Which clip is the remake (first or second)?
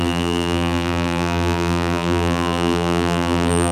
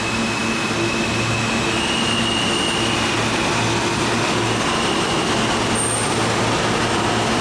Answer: first